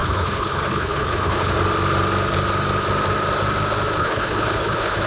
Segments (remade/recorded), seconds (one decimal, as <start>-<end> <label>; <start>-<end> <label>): 0.0-1.5 remade; 1.5-4.0 recorded; 4.0-5.1 remade